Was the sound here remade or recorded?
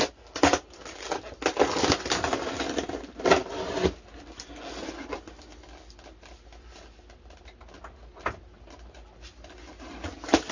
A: recorded